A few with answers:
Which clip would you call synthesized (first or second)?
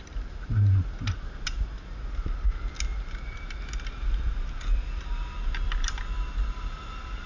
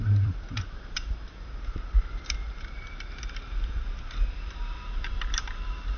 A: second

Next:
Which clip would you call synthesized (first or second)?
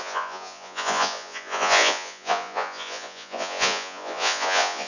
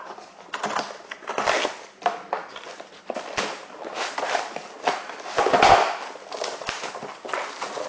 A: first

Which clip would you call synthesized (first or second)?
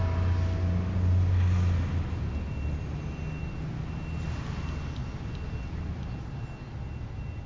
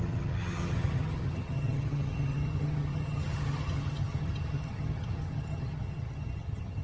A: second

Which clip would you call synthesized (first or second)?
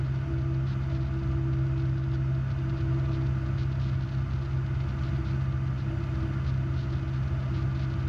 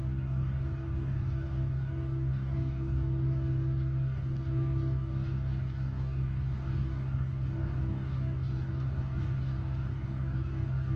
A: second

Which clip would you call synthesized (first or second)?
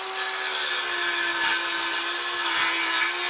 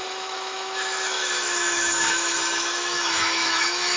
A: second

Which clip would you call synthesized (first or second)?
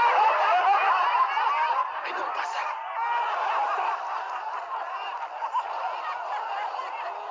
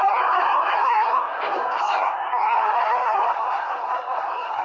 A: second